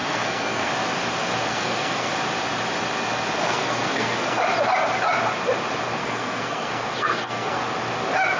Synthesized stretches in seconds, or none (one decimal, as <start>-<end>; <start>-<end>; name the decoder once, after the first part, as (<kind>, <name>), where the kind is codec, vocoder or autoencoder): 0.0-0.7 (codec, SNAC); 1.5-2.1; 3.4-4.4; 6.0-7.6